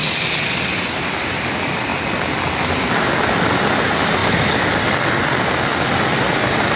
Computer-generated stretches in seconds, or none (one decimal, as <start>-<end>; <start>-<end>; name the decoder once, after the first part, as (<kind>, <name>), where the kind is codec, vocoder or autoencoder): none